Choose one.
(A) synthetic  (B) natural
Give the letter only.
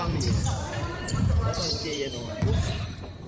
A